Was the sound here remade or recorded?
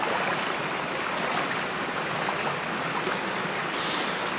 recorded